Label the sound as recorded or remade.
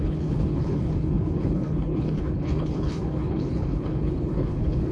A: remade